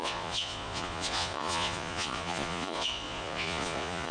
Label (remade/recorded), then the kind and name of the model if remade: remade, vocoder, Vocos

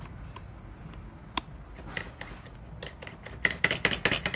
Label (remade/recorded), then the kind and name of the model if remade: recorded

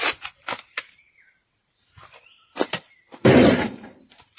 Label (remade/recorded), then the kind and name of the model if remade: remade, vocoder, BigVGAN v2